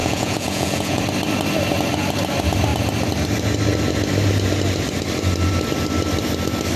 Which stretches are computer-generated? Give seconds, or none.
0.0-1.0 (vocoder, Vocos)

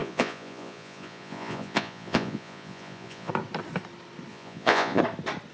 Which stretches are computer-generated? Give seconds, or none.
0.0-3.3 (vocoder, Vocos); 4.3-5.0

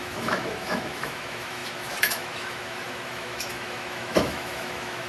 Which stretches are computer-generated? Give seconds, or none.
0.0-5.1 (autoencoder, DAC-VAE)

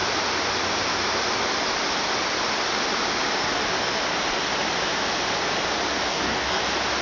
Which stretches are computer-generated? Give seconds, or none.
6.1-6.6 (codec, DAC)

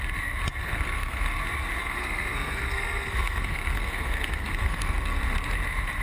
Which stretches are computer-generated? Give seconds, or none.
0.5-1.4 (codec, SNAC); 1.8-5.2

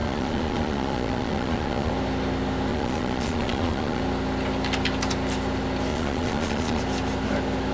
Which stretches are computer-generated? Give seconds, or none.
0.0-1.9 (vocoder, Vocos); 2.7-4.0; 5.9-6.8